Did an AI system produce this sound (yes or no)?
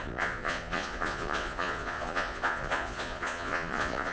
yes